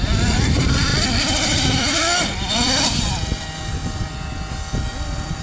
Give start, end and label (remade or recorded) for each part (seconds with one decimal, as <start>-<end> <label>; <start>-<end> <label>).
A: 0.0-5.4 remade